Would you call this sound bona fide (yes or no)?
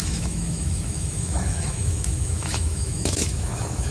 no